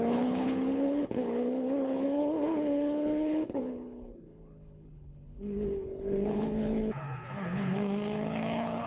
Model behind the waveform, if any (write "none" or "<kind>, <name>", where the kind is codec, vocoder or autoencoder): codec, HILCodec